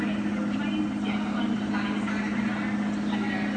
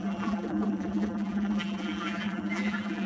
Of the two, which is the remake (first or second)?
second